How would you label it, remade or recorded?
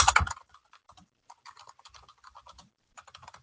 remade